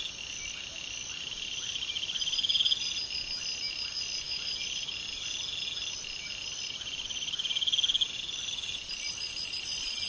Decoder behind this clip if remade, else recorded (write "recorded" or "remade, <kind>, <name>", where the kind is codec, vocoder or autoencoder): recorded